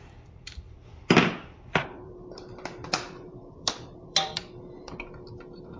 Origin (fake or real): fake